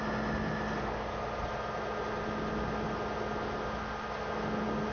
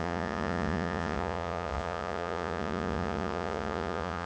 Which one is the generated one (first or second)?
second